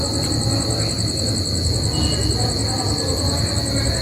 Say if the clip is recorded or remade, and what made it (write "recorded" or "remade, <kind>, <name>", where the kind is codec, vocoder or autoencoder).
recorded